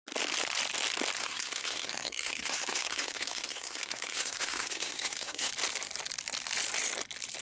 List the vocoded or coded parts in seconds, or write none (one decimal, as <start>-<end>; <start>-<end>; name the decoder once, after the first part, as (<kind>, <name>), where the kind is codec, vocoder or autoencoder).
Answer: 1.2-5.5 (codec, SNAC)